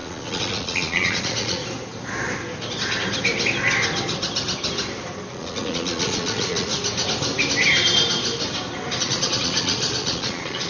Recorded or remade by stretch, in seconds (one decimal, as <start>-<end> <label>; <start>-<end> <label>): 0.0-1.6 remade; 1.6-5.3 recorded; 5.3-6.7 remade; 6.7-9.0 recorded; 9.0-10.7 remade